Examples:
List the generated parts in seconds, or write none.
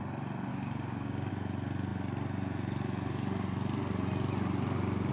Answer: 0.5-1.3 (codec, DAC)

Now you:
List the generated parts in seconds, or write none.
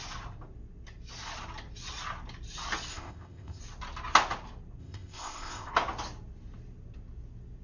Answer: 2.9-3.6 (codec, ZipCodec); 4.8-5.7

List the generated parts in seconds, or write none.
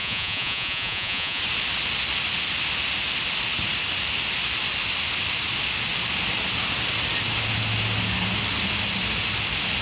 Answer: 0.0-1.4 (vocoder, Vocos)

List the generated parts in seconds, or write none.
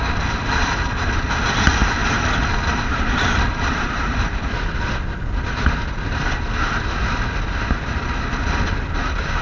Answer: 2.0-4.3 (vocoder, BigVGAN v2)